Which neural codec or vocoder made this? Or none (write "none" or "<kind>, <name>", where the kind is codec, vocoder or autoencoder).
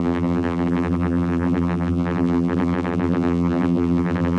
vocoder, BigVGAN v2